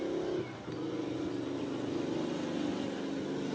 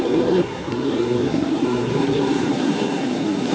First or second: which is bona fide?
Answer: first